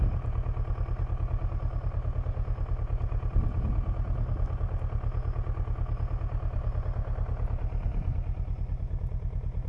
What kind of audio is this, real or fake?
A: real